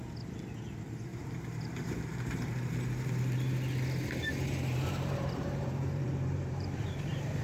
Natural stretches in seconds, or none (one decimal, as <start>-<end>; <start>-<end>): 0.0-1.1; 2.8-4.7